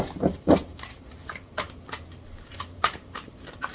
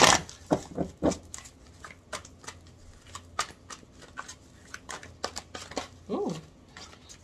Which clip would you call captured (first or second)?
second